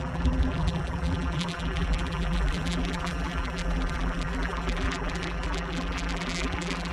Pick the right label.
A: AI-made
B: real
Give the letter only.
A